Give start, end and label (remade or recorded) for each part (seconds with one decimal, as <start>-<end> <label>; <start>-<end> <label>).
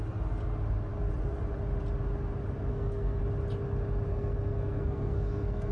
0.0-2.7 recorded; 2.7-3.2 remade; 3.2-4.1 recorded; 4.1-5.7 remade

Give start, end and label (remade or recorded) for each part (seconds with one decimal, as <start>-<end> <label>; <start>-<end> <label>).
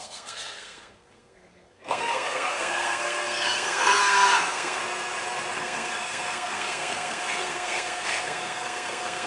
0.0-4.8 remade; 4.8-5.5 recorded; 5.5-9.3 remade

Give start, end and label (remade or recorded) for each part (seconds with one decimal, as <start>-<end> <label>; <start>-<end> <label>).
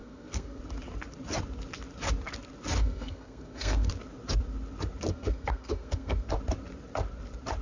0.0-0.6 remade; 0.6-2.8 recorded; 2.8-3.9 remade; 3.9-5.1 recorded; 5.1-6.3 remade; 6.3-7.6 recorded